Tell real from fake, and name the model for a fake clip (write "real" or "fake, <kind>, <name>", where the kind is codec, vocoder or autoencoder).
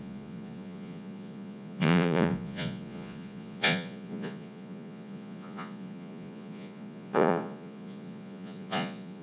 fake, vocoder, Vocos